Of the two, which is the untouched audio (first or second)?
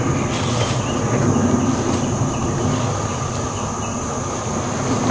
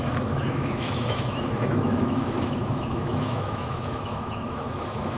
first